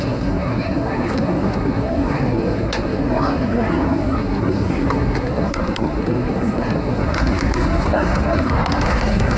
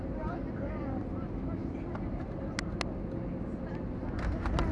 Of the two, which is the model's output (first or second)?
first